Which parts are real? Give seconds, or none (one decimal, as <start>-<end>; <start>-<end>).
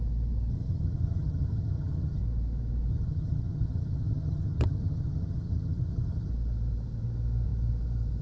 0.0-0.5; 2.2-2.9; 6.3-8.2